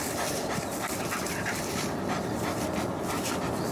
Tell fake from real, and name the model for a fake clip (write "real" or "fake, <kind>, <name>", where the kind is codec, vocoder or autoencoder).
real